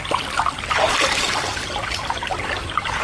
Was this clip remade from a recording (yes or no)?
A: no